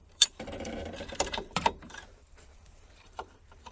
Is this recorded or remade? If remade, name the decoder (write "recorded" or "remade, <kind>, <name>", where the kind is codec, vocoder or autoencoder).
remade, vocoder, BigVGAN v2